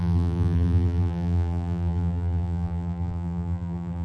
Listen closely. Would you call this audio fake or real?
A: fake